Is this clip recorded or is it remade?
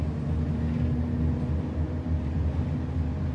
recorded